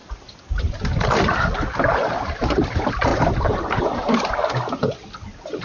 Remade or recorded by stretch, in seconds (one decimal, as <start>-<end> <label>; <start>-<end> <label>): 0.0-2.0 recorded; 2.0-2.6 remade; 2.6-3.1 recorded; 3.1-3.8 remade; 3.8-5.6 recorded